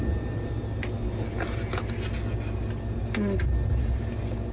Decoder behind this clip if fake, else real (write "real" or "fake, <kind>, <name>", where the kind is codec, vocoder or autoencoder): real